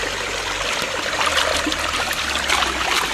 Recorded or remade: recorded